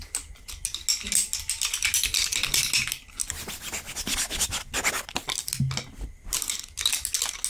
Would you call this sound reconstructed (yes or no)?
no